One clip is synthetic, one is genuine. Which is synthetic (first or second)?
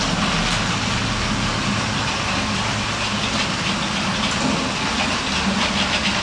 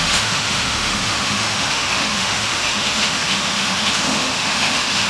second